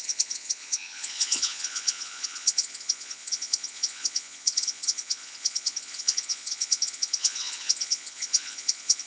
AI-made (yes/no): yes